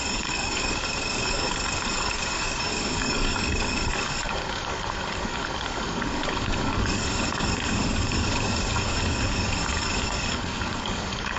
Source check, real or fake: fake